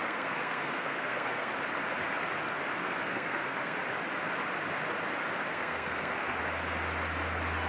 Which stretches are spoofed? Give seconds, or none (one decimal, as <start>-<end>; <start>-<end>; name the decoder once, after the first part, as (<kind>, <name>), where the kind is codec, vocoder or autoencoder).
0.0-1.5 (codec, SNAC); 2.8-3.8; 5.5-6.4